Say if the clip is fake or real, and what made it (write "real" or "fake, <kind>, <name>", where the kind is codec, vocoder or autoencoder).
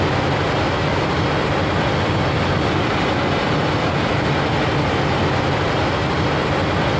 real